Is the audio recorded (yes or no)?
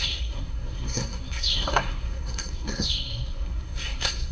no